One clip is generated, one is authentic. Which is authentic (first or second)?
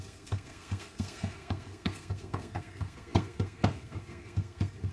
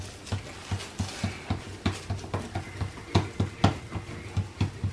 second